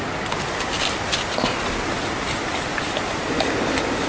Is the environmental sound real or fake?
real